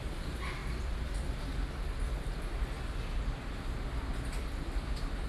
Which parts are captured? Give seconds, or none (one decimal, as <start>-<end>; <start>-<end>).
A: 0.0-5.3